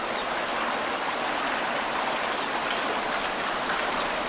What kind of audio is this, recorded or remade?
recorded